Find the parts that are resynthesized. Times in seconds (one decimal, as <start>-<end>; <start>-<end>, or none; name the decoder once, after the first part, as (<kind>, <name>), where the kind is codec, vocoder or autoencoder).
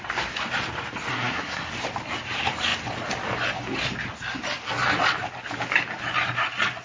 1.1-1.7 (codec, SNAC)